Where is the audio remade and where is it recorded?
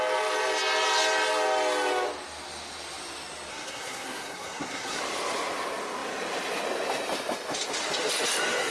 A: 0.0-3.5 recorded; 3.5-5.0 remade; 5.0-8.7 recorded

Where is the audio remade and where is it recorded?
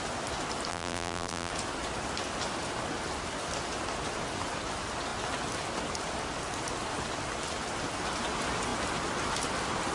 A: 0.0-0.7 recorded; 0.7-1.5 remade; 1.5-9.9 recorded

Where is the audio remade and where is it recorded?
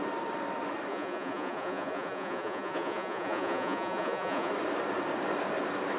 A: 0.0-0.9 recorded; 0.9-4.5 remade; 4.5-6.0 recorded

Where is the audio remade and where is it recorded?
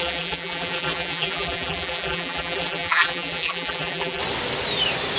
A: 0.0-4.2 remade; 4.2-5.2 recorded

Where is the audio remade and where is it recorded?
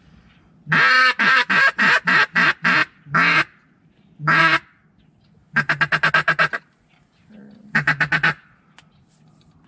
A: 0.0-1.0 recorded; 1.0-1.5 remade; 1.5-9.7 recorded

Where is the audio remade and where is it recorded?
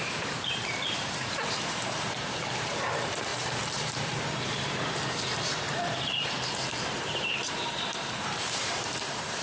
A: 0.0-9.4 remade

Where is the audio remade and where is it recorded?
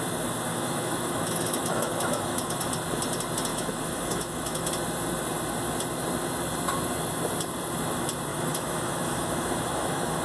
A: 0.0-0.5 recorded; 0.5-2.7 remade; 2.7-3.5 recorded; 3.5-4.7 remade; 4.7-8.3 recorded; 8.3-10.2 remade